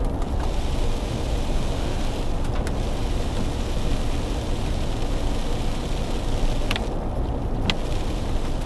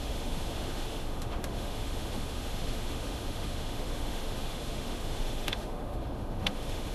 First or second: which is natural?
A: first